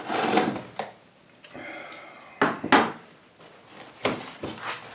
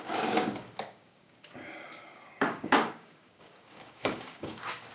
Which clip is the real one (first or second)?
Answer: first